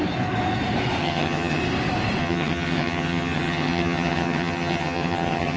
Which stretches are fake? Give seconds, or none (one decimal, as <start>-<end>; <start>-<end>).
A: 1.0-1.6; 2.2-5.6